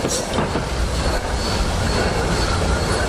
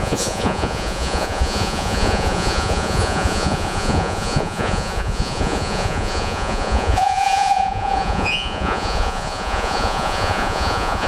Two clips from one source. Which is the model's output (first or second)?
second